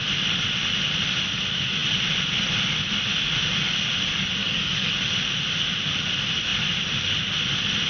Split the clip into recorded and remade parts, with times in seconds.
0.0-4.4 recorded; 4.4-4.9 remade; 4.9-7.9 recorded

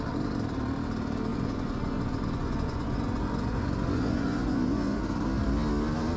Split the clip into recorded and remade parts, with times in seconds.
0.0-1.3 recorded; 1.3-5.0 remade; 5.0-6.2 recorded

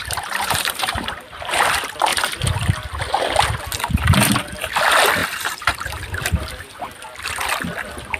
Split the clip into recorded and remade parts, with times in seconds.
0.0-1.6 remade; 1.6-5.2 recorded; 5.2-6.6 remade; 6.6-8.2 recorded

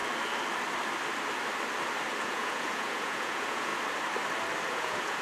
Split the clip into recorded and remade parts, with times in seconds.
0.0-2.2 recorded; 2.2-3.7 remade; 3.7-4.7 recorded; 4.7-5.2 remade

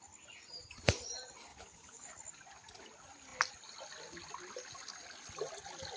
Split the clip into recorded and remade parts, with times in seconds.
0.0-1.5 recorded; 1.5-2.1 remade; 2.1-6.0 recorded

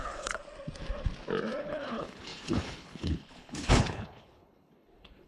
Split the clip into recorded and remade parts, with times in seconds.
0.0-0.4 remade; 0.4-1.6 recorded; 1.6-5.3 remade

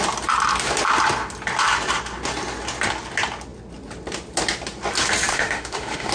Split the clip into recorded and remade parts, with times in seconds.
0.0-5.3 recorded; 5.3-6.1 remade

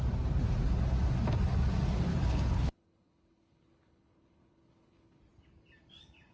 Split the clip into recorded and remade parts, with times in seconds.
0.0-2.1 recorded; 2.1-5.2 remade; 5.2-6.3 recorded